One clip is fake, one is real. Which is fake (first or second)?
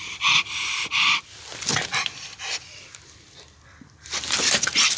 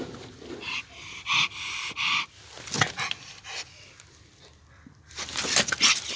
first